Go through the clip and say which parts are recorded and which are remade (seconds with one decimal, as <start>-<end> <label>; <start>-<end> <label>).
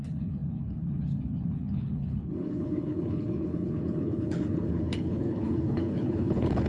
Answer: 0.0-6.7 remade